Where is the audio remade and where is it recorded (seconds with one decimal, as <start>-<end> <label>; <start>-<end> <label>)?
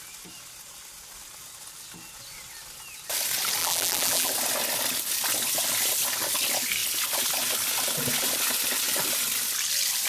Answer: 0.0-3.6 recorded; 3.6-4.3 remade; 4.3-10.1 recorded